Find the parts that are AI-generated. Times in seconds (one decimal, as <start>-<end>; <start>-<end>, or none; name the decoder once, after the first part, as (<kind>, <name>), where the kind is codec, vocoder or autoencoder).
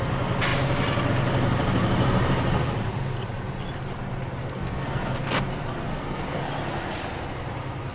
4.4-5.4 (codec, SNAC); 5.9-6.4